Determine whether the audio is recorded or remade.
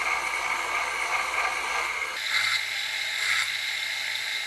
recorded